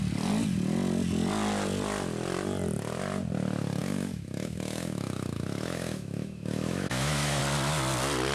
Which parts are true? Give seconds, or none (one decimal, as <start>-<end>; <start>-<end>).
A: 0.0-3.8; 7.4-8.3